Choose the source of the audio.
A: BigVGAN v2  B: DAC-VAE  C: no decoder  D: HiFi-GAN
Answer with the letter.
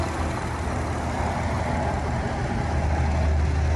C